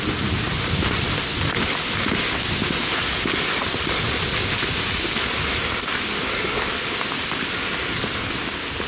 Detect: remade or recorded recorded